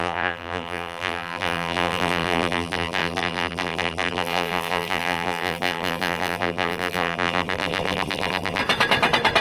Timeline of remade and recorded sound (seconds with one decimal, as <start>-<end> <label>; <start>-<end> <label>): 0.0-8.6 remade; 8.6-9.4 recorded